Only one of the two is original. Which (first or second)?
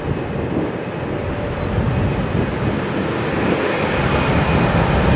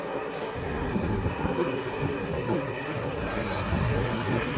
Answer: first